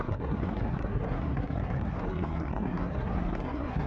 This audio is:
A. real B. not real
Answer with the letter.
B